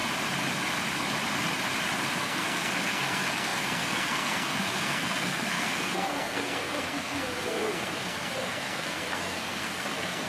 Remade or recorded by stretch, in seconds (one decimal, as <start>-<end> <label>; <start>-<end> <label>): 0.0-2.2 recorded; 2.2-10.3 remade